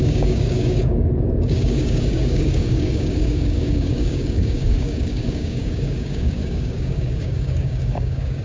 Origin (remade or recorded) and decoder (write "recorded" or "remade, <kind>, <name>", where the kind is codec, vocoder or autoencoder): remade, codec, DAC